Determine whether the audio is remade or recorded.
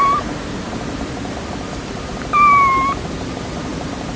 recorded